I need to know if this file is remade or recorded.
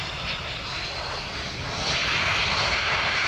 recorded